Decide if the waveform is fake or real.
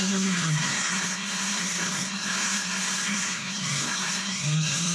fake